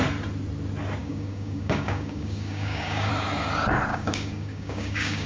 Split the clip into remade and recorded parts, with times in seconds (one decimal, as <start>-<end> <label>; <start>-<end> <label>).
0.0-1.0 recorded; 1.0-3.1 remade; 3.1-3.9 recorded; 3.9-5.3 remade

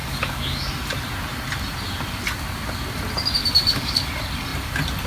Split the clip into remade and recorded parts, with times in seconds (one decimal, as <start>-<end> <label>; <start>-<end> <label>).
0.0-0.7 remade; 0.7-3.4 recorded; 3.4-4.1 remade; 4.1-5.1 recorded

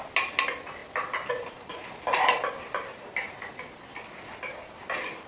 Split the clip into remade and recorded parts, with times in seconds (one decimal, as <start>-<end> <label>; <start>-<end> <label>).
0.0-5.3 recorded

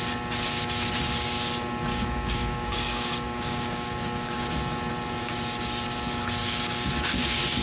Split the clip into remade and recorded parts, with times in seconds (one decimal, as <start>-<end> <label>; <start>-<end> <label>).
0.0-1.9 recorded; 1.9-4.4 remade; 4.4-6.4 recorded; 6.4-6.9 remade; 6.9-7.6 recorded

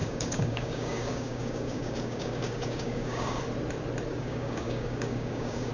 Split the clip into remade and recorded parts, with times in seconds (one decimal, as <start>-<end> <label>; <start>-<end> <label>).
0.0-3.4 remade; 3.4-4.1 recorded; 4.1-5.7 remade

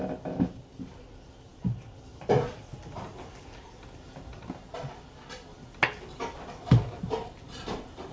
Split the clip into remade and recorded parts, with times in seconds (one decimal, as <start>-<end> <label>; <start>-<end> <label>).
0.0-8.1 recorded